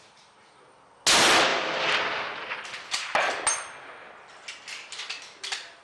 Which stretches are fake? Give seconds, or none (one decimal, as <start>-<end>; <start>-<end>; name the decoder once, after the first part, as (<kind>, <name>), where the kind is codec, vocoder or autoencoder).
none